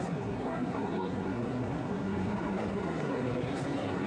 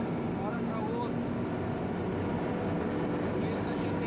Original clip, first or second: second